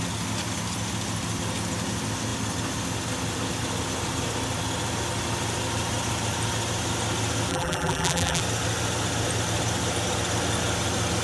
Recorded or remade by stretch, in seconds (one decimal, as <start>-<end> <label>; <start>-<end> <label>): 0.0-7.5 recorded; 7.5-8.4 remade; 8.4-11.2 recorded